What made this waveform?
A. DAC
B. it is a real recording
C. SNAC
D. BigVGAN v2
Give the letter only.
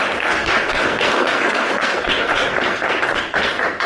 C